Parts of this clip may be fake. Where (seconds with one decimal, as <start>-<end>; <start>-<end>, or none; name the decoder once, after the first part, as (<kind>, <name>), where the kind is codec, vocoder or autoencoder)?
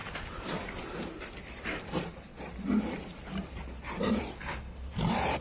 none